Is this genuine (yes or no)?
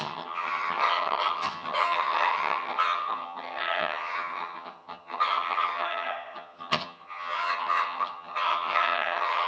no